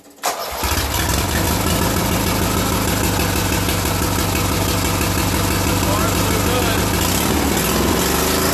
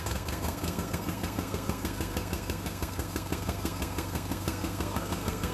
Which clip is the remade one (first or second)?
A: second